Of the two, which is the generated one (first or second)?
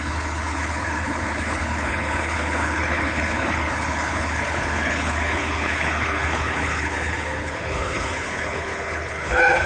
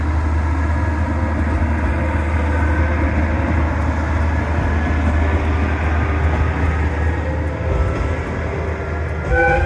first